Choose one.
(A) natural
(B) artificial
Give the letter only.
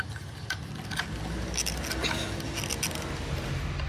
A